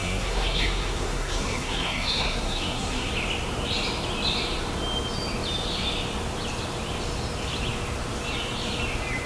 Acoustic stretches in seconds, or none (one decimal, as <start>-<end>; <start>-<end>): 3.1-9.3